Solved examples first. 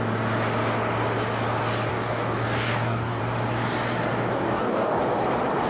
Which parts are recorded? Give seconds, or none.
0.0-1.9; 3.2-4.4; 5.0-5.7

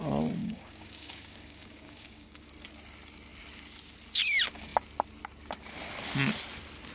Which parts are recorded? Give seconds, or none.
0.0-0.4; 2.5-6.9